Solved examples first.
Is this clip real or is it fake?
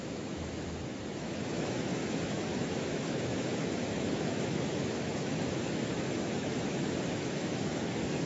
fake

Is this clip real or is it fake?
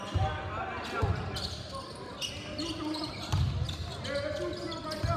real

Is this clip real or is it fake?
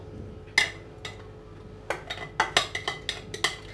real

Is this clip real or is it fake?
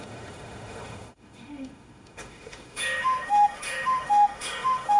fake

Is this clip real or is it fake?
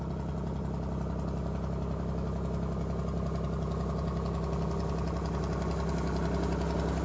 real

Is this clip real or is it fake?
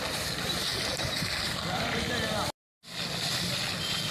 real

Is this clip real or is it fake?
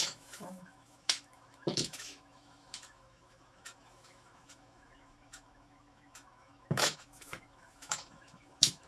fake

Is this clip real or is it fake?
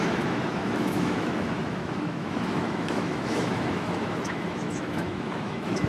fake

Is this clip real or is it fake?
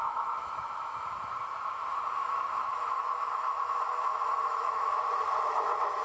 fake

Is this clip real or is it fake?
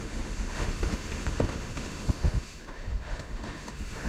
fake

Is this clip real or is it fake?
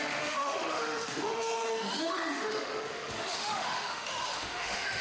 fake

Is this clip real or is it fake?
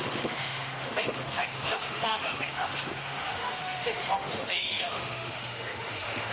fake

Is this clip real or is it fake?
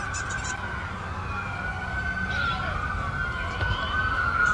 real